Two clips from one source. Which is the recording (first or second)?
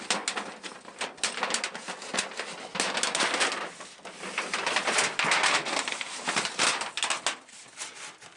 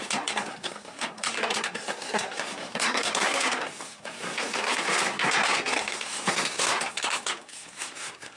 first